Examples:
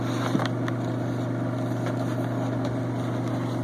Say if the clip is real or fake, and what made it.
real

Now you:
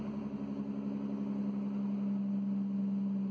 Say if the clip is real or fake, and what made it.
real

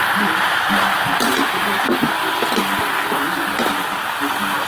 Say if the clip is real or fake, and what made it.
real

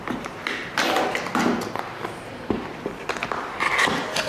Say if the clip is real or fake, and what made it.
real